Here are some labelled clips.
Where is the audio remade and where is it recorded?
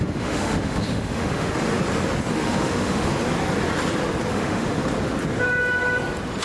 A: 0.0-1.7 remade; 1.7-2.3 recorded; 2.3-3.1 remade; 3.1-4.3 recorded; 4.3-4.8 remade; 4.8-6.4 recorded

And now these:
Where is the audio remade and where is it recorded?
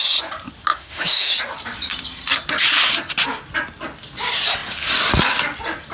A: 0.0-0.7 recorded; 0.7-1.3 remade; 1.3-5.9 recorded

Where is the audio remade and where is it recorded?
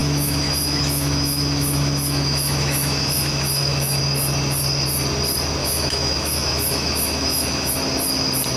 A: 0.0-4.0 remade; 4.0-5.6 recorded; 5.6-7.7 remade; 7.7-8.6 recorded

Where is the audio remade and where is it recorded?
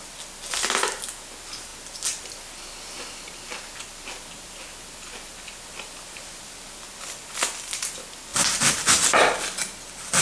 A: 0.0-10.2 recorded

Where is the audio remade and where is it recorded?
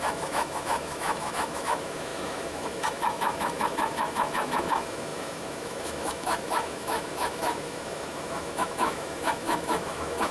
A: 0.0-10.3 remade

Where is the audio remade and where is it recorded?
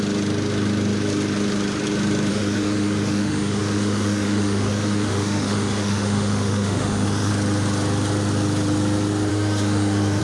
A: 0.0-2.3 recorded; 2.3-7.3 remade; 7.3-9.3 recorded; 9.3-10.2 remade